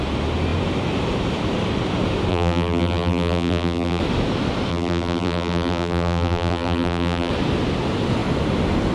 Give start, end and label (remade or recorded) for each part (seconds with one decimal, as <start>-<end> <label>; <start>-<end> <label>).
0.0-2.3 recorded; 2.3-4.0 remade; 4.0-4.7 recorded; 4.7-7.3 remade; 7.3-8.9 recorded